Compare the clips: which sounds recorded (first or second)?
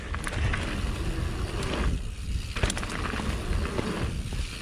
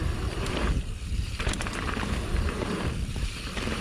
first